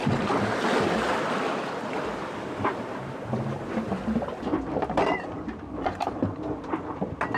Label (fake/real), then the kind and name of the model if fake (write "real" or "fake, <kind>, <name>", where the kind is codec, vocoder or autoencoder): real